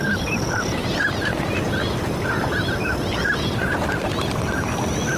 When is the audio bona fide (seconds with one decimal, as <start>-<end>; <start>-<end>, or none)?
none

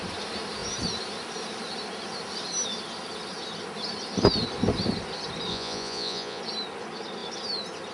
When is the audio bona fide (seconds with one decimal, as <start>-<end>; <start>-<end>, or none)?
0.0-5.5; 6.4-7.9

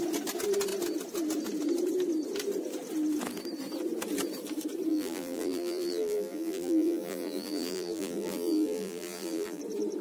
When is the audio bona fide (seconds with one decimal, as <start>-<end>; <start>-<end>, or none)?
0.0-4.9; 9.6-10.0